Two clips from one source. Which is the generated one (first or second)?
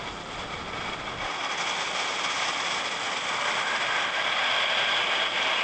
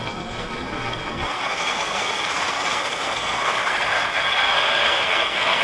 second